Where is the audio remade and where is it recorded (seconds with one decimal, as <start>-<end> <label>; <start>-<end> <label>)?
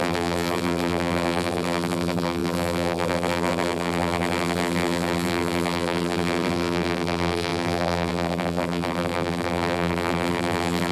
0.0-10.9 remade